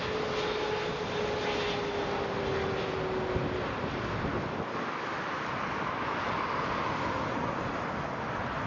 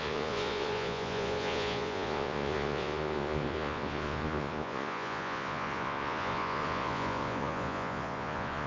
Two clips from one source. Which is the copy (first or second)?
second